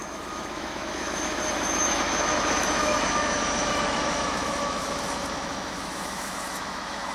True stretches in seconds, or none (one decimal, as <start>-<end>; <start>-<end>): none